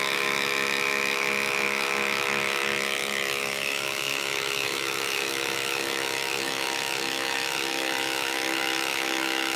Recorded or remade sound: remade